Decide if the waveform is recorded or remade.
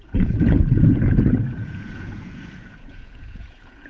remade